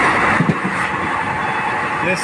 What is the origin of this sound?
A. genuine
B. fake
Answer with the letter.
A